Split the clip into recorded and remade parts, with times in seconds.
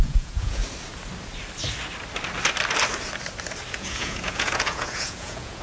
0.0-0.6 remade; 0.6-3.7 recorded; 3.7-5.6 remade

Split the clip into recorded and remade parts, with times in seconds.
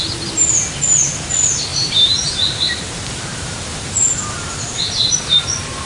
0.0-1.7 recorded; 1.7-4.0 remade; 4.0-5.9 recorded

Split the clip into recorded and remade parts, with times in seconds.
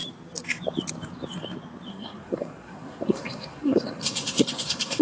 0.0-1.9 recorded; 1.9-5.0 remade